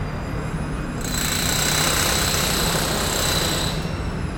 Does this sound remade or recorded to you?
recorded